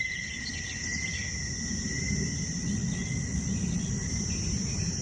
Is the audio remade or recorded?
recorded